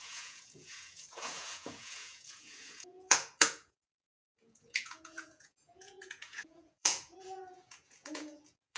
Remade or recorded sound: remade